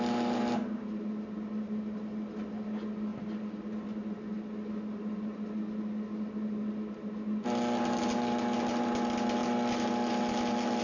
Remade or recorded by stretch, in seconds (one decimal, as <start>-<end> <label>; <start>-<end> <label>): 0.0-10.8 recorded